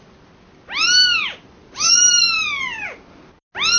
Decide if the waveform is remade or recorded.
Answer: recorded